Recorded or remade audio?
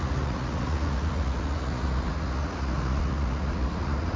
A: remade